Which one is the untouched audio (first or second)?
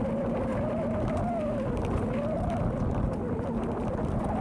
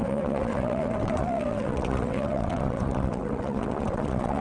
first